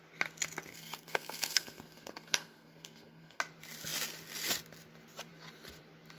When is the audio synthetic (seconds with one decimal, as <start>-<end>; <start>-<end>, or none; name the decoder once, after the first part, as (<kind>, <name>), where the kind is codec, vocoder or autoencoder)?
0.7-3.4 (codec, SNAC)